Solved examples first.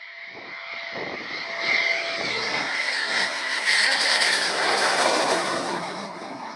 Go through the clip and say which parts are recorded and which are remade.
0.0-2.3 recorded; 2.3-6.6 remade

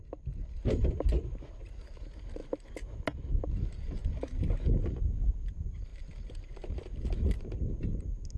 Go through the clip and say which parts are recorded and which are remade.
0.0-8.4 recorded

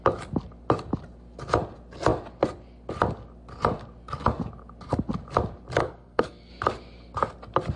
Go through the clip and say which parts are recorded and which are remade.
0.0-5.8 recorded; 5.8-6.5 remade; 6.5-7.8 recorded

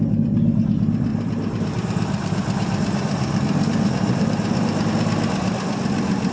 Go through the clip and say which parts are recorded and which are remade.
0.0-1.1 recorded; 1.1-4.9 remade; 4.9-6.3 recorded

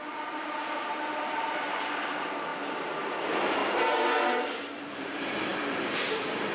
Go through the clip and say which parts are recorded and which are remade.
0.0-2.5 remade; 2.5-3.2 recorded; 3.2-3.6 remade; 3.6-5.0 recorded; 5.0-6.5 remade

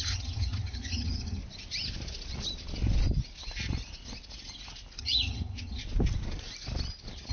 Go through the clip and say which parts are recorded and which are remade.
0.0-1.4 remade; 1.4-5.0 recorded; 5.0-5.8 remade; 5.8-7.3 recorded

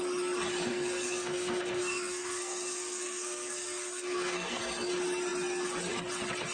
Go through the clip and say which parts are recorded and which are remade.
0.0-0.7 recorded; 0.7-4.6 remade; 4.6-6.5 recorded

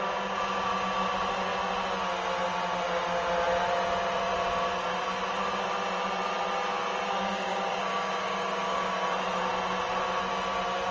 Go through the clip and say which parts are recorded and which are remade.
0.0-7.2 recorded; 7.2-8.9 remade; 8.9-10.9 recorded